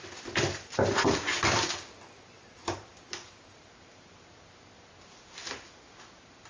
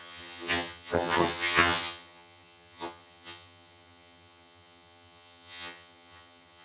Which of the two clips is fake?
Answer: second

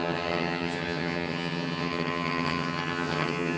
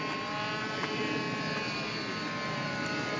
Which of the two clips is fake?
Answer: first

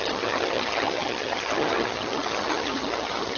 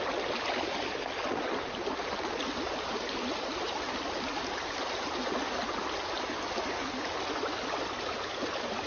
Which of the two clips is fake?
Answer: first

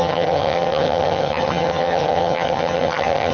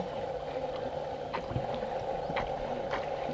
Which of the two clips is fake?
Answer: first